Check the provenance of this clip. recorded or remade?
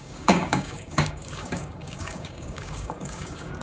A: remade